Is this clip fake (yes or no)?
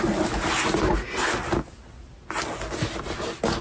no